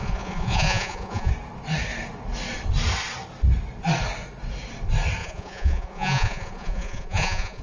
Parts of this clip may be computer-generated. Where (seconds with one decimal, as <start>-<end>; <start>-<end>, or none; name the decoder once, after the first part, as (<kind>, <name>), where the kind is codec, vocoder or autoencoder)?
0.0-1.3 (vocoder, Vocos); 5.2-7.6